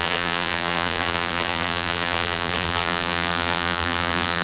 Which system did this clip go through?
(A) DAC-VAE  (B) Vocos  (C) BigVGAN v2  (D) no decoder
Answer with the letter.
C